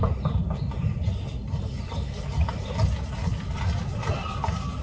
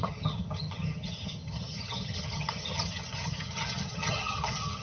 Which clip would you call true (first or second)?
first